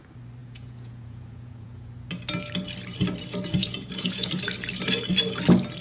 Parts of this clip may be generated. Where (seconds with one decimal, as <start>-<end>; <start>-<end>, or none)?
0.4-1.9; 3.6-4.3